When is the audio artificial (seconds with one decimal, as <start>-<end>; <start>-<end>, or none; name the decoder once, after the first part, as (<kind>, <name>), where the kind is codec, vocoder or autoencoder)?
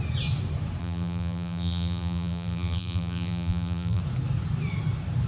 0.8-4.0 (vocoder, BigVGAN v2)